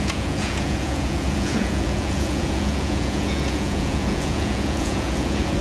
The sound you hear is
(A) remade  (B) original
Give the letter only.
A